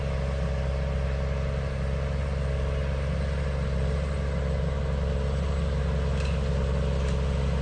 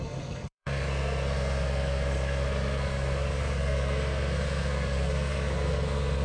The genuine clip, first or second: first